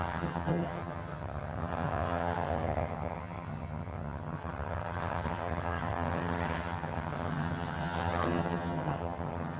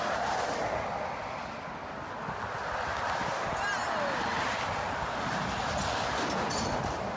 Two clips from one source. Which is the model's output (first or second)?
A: first